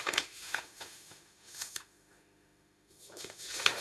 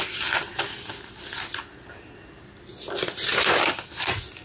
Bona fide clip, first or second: second